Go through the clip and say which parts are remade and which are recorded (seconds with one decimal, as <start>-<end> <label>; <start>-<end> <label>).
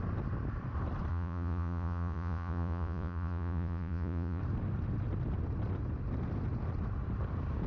0.0-1.1 recorded; 1.1-4.4 remade; 4.4-7.7 recorded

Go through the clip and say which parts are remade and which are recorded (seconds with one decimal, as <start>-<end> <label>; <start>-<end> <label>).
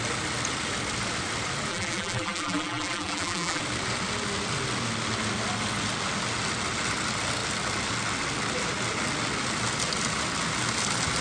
0.0-1.7 recorded; 1.7-3.6 remade; 3.6-11.2 recorded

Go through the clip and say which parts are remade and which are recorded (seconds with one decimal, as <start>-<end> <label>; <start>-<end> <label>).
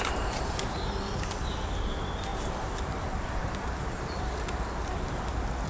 0.0-2.3 recorded; 2.3-3.1 remade; 3.1-5.7 recorded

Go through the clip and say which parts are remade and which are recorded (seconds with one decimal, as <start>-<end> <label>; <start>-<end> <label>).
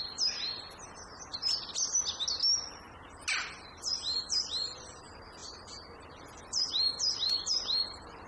0.0-8.3 recorded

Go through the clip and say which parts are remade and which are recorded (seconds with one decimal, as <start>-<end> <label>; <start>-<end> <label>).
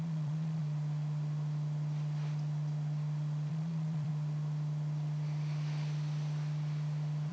0.0-0.6 remade; 0.6-3.5 recorded; 3.5-4.1 remade; 4.1-7.3 recorded